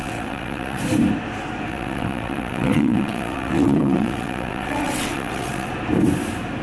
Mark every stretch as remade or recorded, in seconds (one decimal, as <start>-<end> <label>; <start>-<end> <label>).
0.0-0.8 remade; 0.8-1.7 recorded; 1.7-5.7 remade; 5.7-6.6 recorded